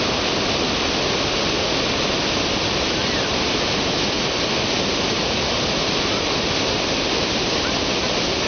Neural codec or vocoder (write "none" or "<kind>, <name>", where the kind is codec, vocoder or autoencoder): none